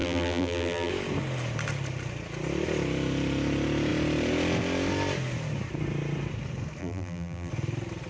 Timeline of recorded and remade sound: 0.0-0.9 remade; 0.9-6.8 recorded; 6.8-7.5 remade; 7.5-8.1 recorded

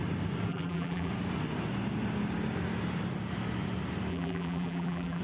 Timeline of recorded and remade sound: 0.0-0.5 recorded; 0.5-1.1 remade; 1.1-4.1 recorded; 4.1-5.2 remade

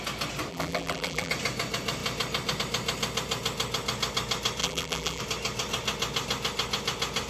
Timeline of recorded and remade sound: 0.0-0.5 recorded; 0.5-1.3 remade; 1.3-4.6 recorded; 4.6-5.2 remade; 5.2-7.3 recorded